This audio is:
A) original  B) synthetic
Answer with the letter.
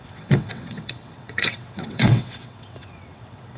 B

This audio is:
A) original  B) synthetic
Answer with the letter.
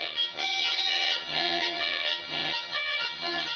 B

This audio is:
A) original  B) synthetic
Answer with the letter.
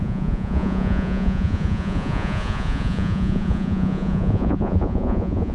B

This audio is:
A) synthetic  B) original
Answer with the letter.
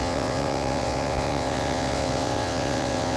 A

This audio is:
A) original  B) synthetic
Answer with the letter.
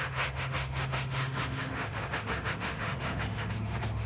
B